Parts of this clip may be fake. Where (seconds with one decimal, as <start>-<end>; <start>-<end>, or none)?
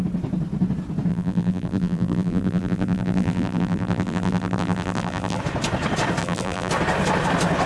1.1-5.4; 6.2-6.7